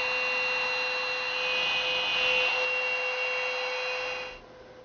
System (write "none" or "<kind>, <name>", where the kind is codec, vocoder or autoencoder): none